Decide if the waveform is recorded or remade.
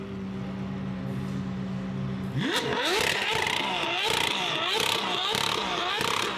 recorded